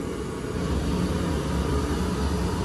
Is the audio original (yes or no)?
yes